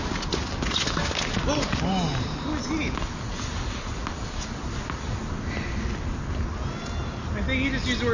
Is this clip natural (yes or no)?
yes